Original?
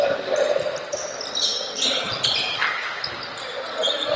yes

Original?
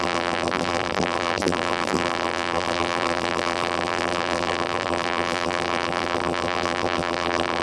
no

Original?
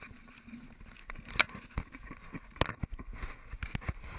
yes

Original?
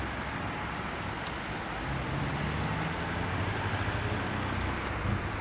yes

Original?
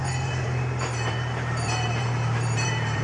no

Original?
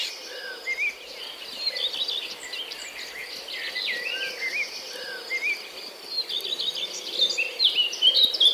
yes